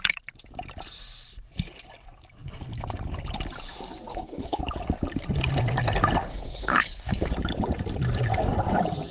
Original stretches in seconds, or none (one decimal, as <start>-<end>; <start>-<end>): 0.0-4.1; 4.6-6.3; 7.3-9.1